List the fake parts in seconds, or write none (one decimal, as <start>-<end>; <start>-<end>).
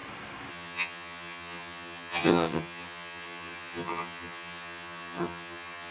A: 0.5-5.9